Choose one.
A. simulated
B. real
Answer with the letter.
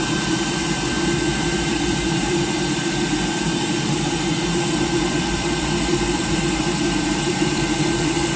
A